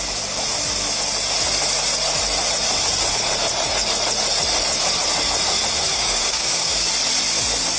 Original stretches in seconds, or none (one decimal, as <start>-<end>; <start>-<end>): 0.0-5.9; 6.9-7.8